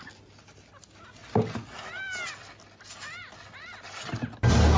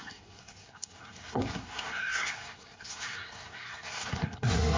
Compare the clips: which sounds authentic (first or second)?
first